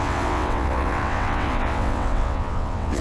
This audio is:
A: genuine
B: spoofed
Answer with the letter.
B